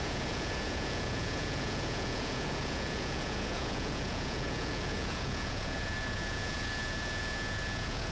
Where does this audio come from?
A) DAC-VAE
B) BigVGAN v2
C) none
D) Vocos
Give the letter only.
D